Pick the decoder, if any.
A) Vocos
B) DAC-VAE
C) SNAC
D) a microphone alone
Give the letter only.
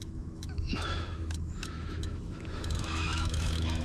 B